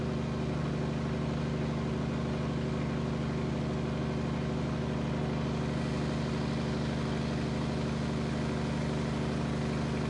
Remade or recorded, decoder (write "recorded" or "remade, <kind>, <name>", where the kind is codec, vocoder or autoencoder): recorded